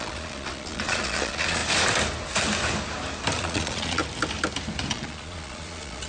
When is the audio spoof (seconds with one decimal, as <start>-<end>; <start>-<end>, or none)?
0.0-1.6; 3.4-4.0; 4.9-6.1